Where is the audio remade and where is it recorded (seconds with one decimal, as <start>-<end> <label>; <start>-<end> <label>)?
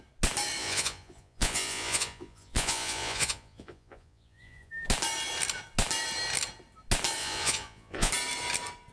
0.0-0.6 recorded; 0.6-4.7 remade; 4.7-7.2 recorded; 7.2-8.1 remade; 8.1-8.9 recorded